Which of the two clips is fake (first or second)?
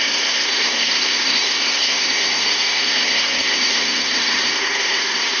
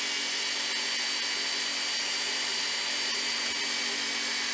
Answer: first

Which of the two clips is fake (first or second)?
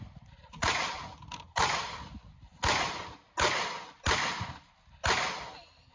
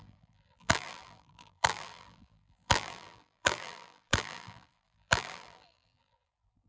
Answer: second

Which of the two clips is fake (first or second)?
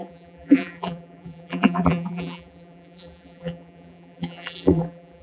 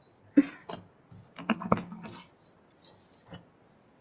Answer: first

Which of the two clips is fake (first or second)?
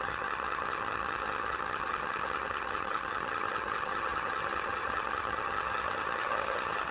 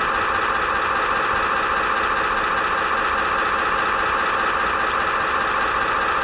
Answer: first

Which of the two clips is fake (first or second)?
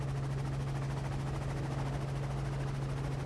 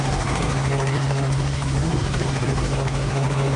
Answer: second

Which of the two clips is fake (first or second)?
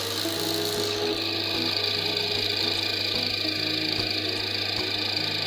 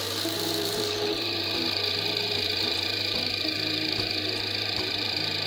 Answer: second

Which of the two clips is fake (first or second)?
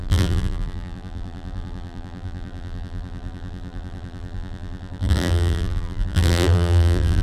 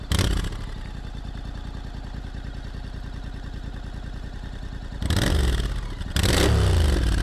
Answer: first